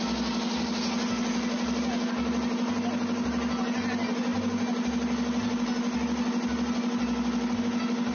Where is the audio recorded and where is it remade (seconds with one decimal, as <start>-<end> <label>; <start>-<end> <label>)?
0.0-8.1 recorded